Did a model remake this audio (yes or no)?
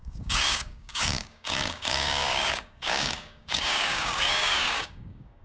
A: yes